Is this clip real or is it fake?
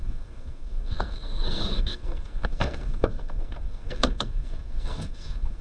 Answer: fake